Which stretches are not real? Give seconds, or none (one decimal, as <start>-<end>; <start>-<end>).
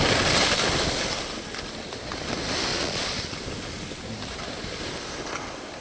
2.7-3.2